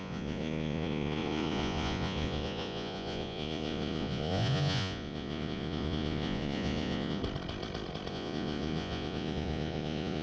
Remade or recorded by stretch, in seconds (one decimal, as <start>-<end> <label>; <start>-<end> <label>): 0.0-7.2 remade; 7.2-8.1 recorded; 8.1-10.2 remade